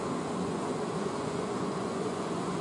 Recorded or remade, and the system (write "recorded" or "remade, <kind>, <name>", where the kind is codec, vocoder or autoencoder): remade, vocoder, Vocos